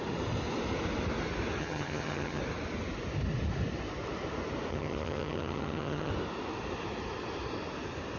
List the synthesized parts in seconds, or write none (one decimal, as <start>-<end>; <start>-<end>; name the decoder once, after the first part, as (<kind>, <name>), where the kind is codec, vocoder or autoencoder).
1.6-2.4 (vocoder, HiFi-GAN); 4.7-6.1